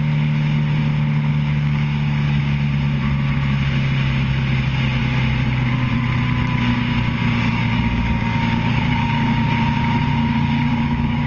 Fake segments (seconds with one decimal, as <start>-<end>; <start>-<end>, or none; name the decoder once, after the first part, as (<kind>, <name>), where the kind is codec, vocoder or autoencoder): 1.3-2.4 (codec, DAC); 6.7-9.5; 10.1-11.3